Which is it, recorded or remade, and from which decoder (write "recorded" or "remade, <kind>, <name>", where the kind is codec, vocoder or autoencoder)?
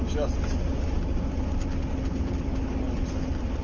recorded